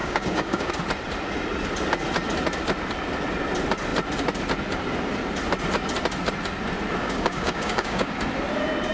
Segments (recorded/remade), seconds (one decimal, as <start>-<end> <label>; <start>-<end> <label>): 0.0-0.7 remade; 0.7-7.0 recorded; 7.0-8.1 remade; 8.1-8.9 recorded